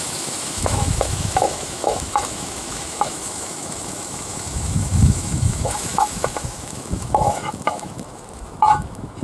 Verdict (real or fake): fake